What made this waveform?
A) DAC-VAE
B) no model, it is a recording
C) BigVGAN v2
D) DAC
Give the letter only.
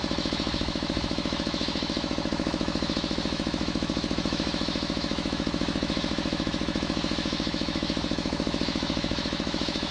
A